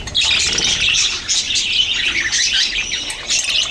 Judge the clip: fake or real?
real